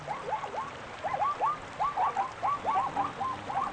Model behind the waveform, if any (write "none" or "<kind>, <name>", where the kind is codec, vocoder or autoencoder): none